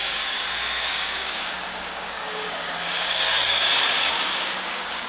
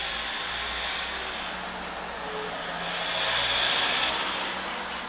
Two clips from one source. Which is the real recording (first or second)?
second